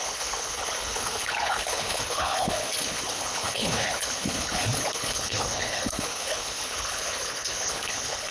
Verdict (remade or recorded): remade